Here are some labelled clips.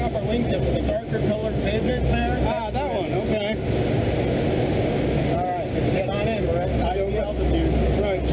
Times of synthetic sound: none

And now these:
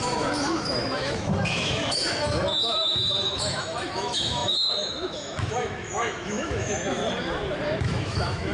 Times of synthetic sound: 0.0-7.0 (autoencoder, DAC-VAE); 7.8-8.5